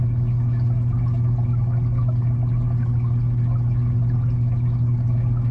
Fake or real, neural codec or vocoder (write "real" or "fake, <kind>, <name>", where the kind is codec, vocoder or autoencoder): real